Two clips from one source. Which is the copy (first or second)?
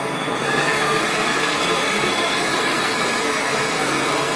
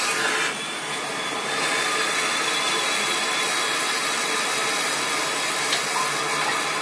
first